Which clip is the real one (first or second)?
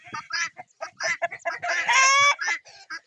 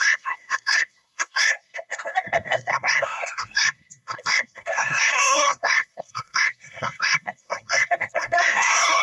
first